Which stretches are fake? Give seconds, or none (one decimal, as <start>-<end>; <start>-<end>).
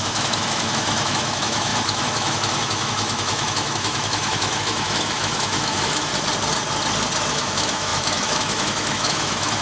0.0-6.1; 7.3-9.6